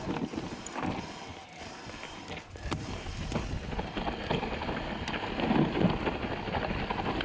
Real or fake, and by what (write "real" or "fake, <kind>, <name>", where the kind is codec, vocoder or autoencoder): fake, vocoder, BigVGAN v2